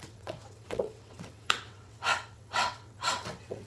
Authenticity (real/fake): fake